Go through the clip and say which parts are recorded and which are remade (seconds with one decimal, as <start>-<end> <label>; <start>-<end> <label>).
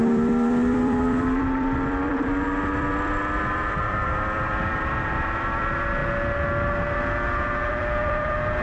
0.0-6.0 remade; 6.0-7.7 recorded; 7.7-8.6 remade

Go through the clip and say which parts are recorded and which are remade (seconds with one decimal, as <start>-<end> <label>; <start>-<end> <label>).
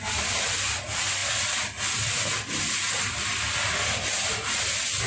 0.0-5.1 recorded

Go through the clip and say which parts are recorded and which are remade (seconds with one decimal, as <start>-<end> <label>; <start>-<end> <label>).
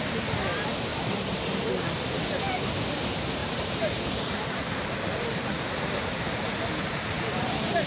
0.0-0.9 recorded; 0.9-1.4 remade; 1.4-3.4 recorded; 3.4-7.9 remade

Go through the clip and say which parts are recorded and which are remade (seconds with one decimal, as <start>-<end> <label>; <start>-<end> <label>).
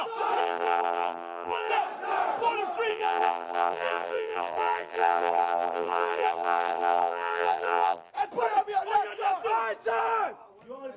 0.0-0.4 recorded; 0.4-1.7 remade; 1.7-2.9 recorded; 2.9-8.1 remade; 8.1-11.0 recorded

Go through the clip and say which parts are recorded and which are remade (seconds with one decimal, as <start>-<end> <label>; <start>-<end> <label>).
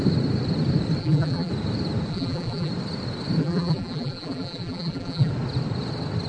0.0-1.0 recorded; 1.0-1.5 remade; 1.5-2.1 recorded; 2.1-2.7 remade; 2.7-3.4 recorded; 3.4-5.3 remade; 5.3-6.3 recorded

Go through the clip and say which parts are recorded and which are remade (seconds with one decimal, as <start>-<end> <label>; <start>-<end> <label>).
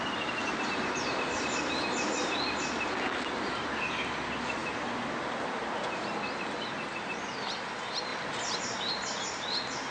0.0-0.4 recorded; 0.4-2.4 remade; 2.4-9.9 recorded